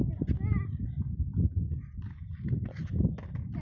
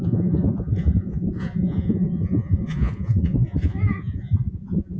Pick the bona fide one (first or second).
first